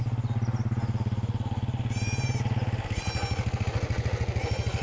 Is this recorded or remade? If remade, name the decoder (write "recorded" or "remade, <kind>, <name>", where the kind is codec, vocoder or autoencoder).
recorded